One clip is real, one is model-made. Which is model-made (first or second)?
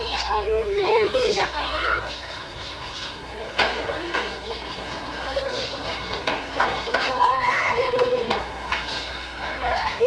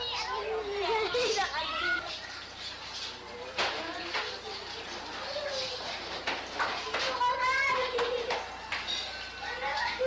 first